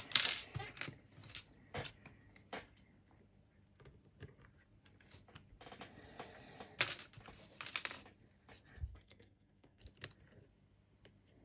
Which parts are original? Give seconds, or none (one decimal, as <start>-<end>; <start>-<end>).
0.0-8.9; 9.8-11.4